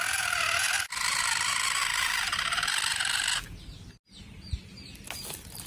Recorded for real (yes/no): yes